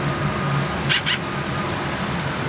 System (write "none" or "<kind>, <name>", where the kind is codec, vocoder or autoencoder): none